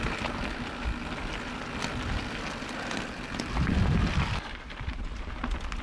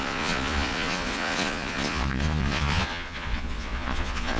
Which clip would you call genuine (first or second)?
first